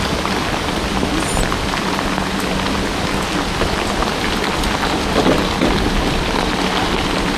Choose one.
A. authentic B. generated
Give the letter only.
A